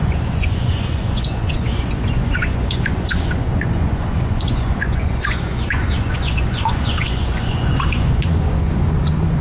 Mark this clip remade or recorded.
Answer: remade